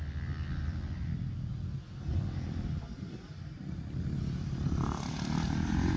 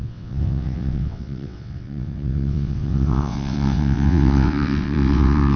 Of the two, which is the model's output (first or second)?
second